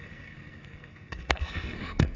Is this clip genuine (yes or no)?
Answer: no